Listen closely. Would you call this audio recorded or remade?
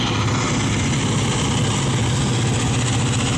recorded